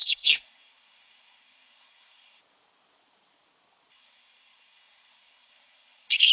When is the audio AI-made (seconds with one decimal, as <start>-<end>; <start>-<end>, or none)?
0.0-2.4; 3.9-6.3